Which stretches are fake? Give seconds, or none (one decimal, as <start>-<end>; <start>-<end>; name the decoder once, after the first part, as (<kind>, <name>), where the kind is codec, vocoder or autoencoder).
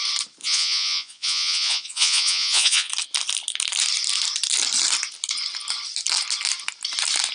0.4-2.9 (vocoder, Vocos)